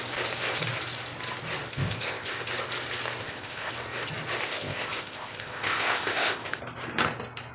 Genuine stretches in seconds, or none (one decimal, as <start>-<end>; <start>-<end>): 0.0-1.7; 2.4-3.2; 3.7-4.4; 6.6-7.5